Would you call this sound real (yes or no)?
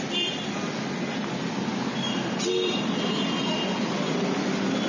yes